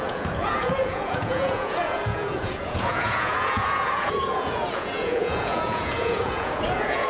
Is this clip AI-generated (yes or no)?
yes